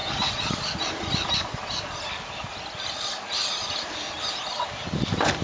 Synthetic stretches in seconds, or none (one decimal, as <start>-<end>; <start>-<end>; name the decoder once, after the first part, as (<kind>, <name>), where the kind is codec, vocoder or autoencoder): none